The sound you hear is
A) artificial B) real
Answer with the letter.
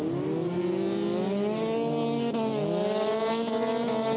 B